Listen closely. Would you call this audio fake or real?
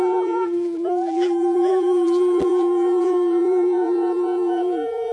fake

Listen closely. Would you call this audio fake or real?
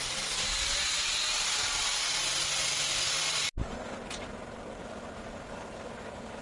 real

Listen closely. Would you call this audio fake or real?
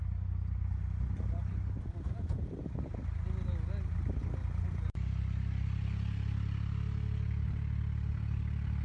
real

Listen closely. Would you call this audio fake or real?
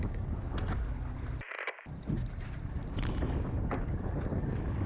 real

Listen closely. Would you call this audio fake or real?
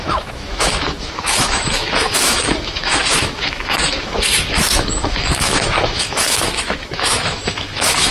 fake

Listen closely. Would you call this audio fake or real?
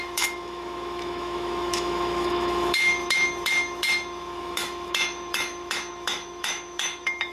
fake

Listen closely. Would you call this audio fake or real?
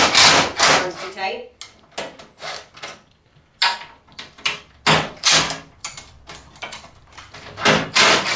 real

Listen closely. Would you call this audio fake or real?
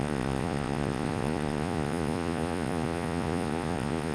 fake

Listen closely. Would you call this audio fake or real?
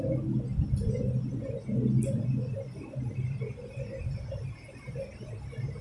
real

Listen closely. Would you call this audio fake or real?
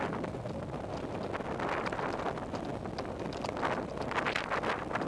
real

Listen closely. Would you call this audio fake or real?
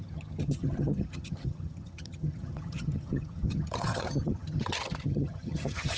fake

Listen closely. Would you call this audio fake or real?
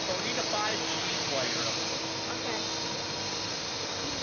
real